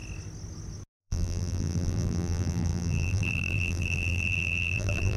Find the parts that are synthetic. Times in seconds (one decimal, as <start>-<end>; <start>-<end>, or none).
1.0-5.2